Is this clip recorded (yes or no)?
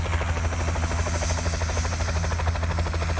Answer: yes